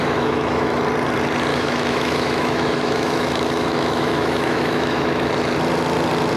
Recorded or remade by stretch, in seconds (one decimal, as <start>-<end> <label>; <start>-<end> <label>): 0.0-0.8 remade; 0.8-1.5 recorded; 1.5-5.3 remade; 5.3-6.4 recorded